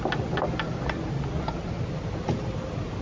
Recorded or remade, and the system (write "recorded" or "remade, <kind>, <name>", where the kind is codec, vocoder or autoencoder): recorded